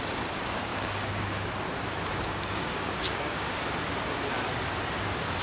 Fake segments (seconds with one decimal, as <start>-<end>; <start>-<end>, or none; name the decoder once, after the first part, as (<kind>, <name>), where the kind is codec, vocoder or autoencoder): 0.7-1.5 (codec, DAC); 2.1-3.5